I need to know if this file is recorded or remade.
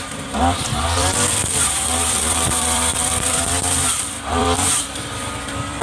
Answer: remade